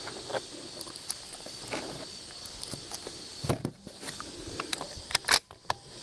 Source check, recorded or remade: remade